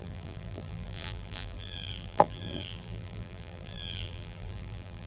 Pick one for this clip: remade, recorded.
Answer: remade